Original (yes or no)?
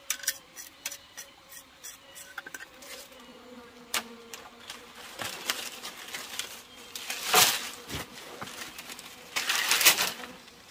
yes